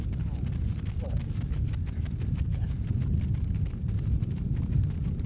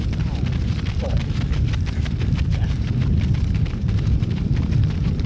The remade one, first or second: second